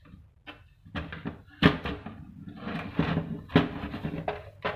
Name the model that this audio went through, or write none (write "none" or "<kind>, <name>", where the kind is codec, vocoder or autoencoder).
none